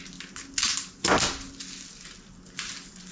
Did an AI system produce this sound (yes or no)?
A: no